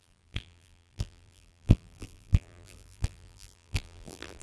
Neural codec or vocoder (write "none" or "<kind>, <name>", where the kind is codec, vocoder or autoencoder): vocoder, BigVGAN v2